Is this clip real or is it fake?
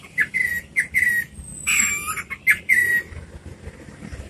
real